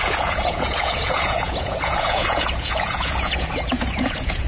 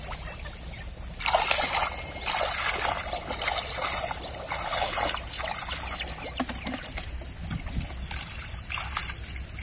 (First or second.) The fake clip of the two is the first